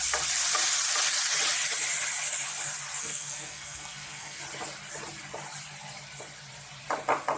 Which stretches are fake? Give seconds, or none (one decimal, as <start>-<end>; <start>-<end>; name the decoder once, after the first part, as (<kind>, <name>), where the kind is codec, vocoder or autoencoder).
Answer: 3.0-4.4 (codec, SNAC)